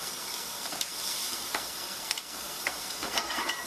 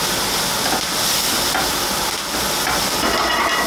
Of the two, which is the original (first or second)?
second